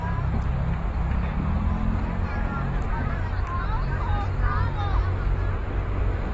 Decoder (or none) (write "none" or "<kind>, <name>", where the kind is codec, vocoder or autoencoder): none